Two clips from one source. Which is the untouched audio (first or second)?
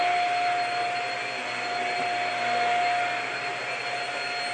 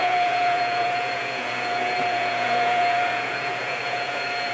first